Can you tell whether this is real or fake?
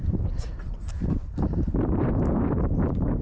fake